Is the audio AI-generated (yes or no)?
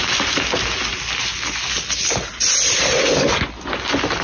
no